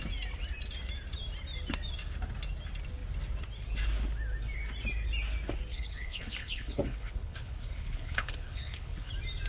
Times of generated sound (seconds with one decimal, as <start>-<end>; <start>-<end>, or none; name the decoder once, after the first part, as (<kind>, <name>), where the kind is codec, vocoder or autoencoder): 5.7-9.1 (codec, HILCodec)